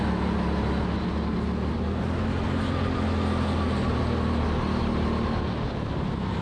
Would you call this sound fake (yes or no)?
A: no